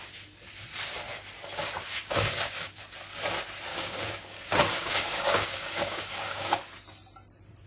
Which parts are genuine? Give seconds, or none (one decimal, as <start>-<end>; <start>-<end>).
0.0-1.9; 2.8-3.7; 6.6-7.7